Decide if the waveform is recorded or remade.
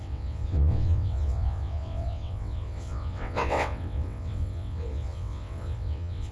remade